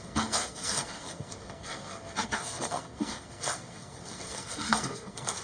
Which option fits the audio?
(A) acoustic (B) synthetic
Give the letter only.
B